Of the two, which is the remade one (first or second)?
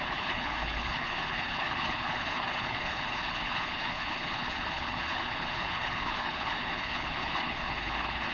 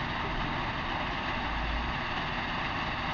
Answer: first